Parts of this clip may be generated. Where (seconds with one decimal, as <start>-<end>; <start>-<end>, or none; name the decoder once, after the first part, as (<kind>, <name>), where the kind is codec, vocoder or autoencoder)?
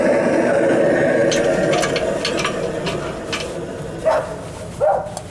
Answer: none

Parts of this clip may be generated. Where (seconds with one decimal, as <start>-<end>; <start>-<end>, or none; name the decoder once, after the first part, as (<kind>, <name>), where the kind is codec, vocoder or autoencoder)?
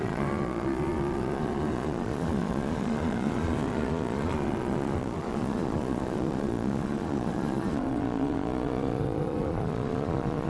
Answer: 0.0-10.5 (vocoder, Vocos)